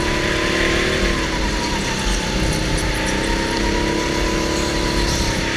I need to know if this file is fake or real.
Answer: real